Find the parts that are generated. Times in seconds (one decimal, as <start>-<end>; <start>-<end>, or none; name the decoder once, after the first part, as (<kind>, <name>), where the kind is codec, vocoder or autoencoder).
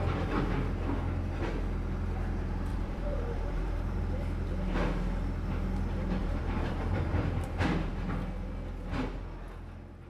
2.7-4.0 (vocoder, BigVGAN v2); 6.2-7.9